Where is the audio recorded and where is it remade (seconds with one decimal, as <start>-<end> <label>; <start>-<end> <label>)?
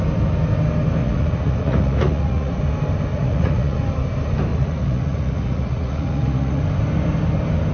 0.0-1.0 recorded; 1.0-2.6 remade; 2.6-3.1 recorded; 3.1-3.8 remade; 3.8-4.5 recorded; 4.5-6.6 remade; 6.6-7.7 recorded